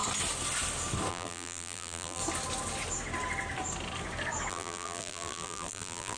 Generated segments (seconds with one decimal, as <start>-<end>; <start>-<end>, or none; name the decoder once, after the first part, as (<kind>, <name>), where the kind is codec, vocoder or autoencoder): 1.1-2.2 (vocoder, BigVGAN v2); 4.5-6.2